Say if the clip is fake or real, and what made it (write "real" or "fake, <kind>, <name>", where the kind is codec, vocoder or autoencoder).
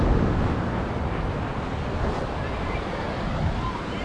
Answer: real